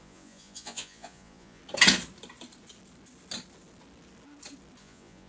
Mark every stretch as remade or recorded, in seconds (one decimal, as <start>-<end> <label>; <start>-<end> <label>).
0.0-1.6 remade; 1.6-4.8 recorded; 4.8-5.3 remade